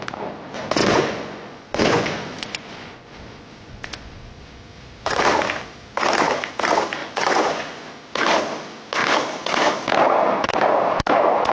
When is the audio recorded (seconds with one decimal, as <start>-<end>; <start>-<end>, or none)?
0.0-0.8; 4.6-7.0; 7.9-11.5